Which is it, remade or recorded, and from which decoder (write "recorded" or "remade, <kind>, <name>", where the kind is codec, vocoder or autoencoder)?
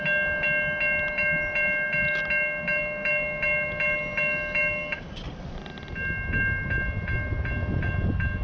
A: recorded